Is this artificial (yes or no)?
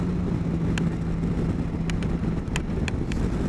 no